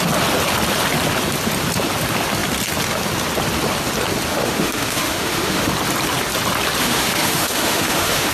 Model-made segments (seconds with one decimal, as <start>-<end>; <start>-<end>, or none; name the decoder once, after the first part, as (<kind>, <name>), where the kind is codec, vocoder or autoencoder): 4.3-5.7 (autoencoder, DAC-VAE); 6.8-8.3